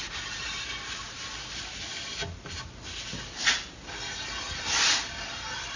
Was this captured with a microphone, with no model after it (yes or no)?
yes